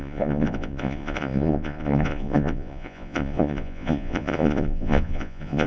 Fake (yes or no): yes